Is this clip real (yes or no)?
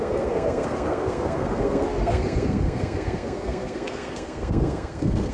no